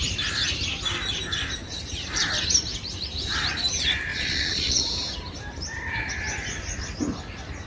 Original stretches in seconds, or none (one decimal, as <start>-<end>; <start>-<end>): 0.0-4.1; 4.8-7.7